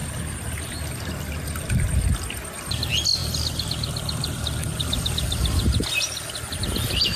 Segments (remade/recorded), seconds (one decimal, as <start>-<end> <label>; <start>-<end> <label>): 0.0-7.2 recorded